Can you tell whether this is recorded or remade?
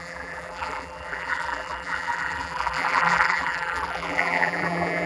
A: remade